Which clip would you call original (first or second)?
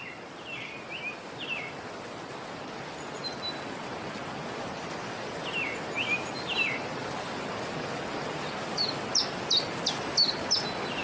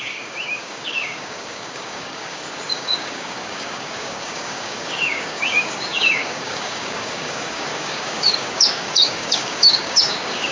first